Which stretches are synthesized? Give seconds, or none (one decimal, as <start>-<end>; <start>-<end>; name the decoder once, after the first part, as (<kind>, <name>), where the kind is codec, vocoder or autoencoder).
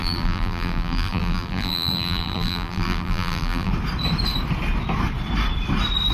0.0-3.7 (vocoder, BigVGAN v2)